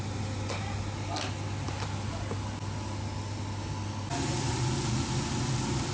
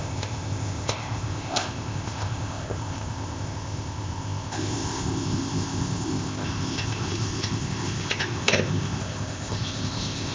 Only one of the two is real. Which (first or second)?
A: first